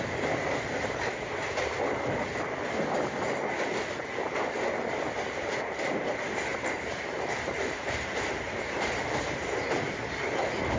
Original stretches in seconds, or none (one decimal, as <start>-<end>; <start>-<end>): 0.0-6.5; 10.3-10.8